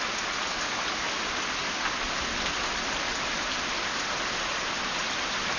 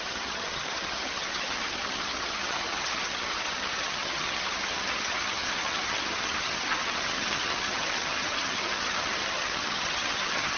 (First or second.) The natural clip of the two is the first